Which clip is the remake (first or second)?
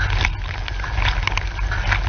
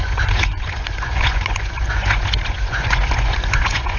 second